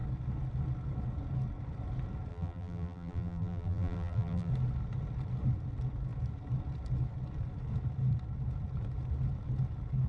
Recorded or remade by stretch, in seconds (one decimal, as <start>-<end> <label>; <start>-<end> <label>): 0.0-2.3 recorded; 2.3-4.5 remade; 4.5-10.1 recorded